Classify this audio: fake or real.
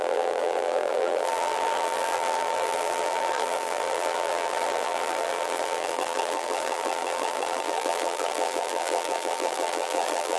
fake